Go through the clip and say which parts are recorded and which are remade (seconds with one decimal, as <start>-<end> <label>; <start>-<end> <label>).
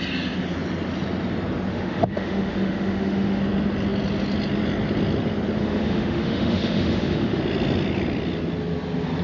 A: 0.0-1.7 recorded; 1.7-3.4 remade; 3.4-5.6 recorded; 5.6-7.4 remade; 7.4-9.2 recorded